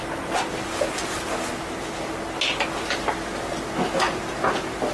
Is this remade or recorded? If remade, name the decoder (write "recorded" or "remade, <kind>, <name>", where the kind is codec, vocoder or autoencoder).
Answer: recorded